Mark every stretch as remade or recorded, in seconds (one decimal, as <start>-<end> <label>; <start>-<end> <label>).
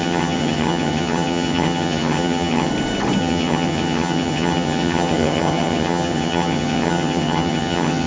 0.0-2.7 remade; 2.7-3.2 recorded; 3.2-8.1 remade